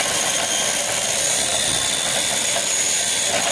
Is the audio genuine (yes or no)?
yes